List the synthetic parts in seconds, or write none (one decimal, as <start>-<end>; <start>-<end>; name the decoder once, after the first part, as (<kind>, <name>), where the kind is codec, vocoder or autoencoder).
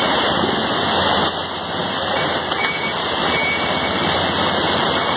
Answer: 1.8-5.2 (vocoder, BigVGAN v2)